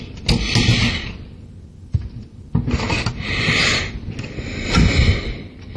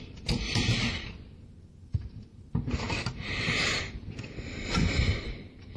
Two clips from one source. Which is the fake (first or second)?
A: second